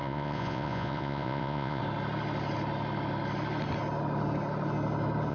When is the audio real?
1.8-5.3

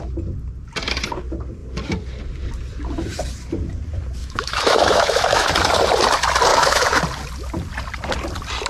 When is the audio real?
0.0-4.2; 5.5-6.5; 7.0-8.7

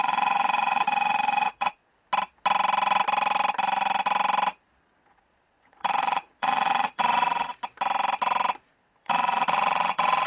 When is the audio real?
1.9-4.8; 7.5-9.0

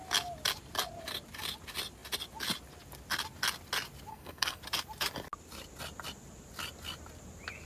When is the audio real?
0.0-4.1; 4.6-7.7

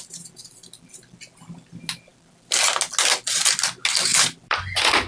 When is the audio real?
0.0-2.1; 2.6-4.1